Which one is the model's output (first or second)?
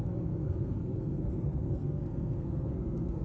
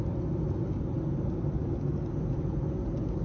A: first